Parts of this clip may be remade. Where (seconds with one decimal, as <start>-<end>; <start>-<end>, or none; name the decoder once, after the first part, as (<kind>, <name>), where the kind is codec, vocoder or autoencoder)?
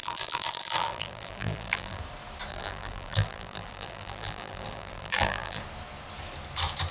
0.0-2.0 (vocoder, BigVGAN v2); 2.5-5.6